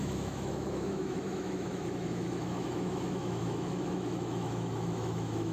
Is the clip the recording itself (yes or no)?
no